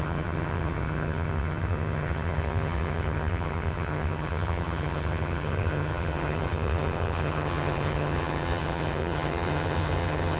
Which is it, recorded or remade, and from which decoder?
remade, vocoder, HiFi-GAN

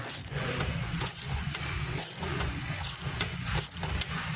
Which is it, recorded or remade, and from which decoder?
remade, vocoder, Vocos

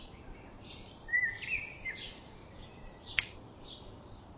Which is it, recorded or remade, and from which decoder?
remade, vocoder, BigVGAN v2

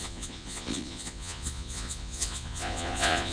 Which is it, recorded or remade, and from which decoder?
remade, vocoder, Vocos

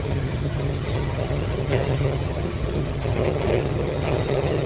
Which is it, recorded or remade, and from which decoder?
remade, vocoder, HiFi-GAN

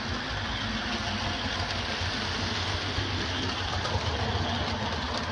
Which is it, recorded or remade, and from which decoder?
recorded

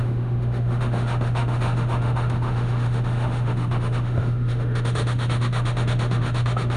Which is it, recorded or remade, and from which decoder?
remade, autoencoder, DAC-VAE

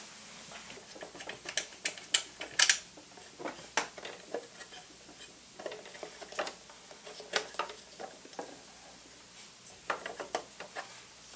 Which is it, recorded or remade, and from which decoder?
recorded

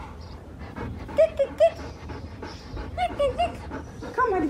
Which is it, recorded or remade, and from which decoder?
remade, vocoder, BigVGAN v2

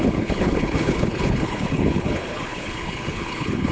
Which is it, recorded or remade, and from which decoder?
remade, codec, HILCodec